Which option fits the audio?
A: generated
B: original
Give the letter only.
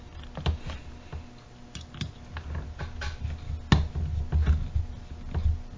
B